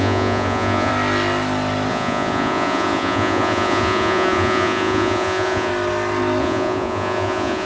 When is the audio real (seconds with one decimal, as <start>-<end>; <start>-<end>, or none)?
0.9-1.9; 5.7-6.4